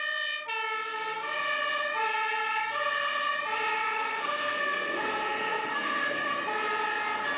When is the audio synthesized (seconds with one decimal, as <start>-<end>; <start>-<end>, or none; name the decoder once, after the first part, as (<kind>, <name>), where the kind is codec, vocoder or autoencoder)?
3.7-6.3 (codec, SNAC)